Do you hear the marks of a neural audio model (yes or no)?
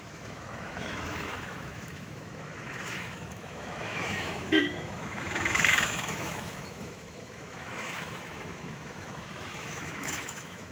yes